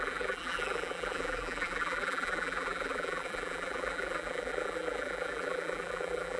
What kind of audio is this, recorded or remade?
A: remade